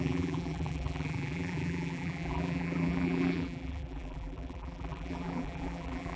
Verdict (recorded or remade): remade